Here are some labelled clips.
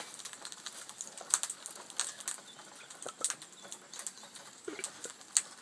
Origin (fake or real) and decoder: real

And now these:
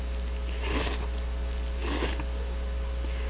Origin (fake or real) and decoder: real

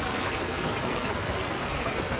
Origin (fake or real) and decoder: fake, codec, SNAC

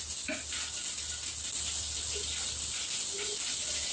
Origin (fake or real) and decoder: real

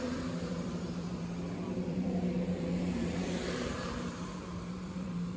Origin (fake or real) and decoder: fake, vocoder, BigVGAN v2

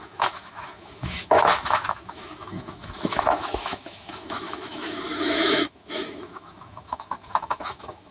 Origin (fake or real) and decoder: fake, autoencoder, DAC-VAE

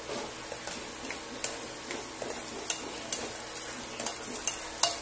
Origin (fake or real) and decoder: real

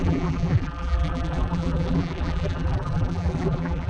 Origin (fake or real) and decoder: fake, vocoder, BigVGAN v2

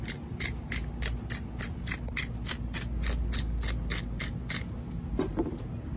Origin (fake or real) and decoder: real